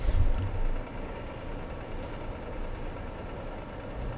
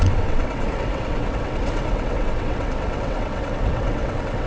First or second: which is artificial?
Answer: second